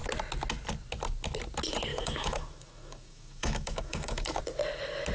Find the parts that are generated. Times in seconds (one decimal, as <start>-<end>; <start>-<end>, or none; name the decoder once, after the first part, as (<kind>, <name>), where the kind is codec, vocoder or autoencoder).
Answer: 1.9-4.4 (autoencoder, DAC-VAE)